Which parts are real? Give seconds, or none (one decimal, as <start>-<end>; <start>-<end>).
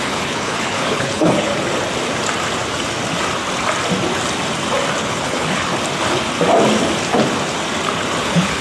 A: 1.5-5.0; 5.7-8.2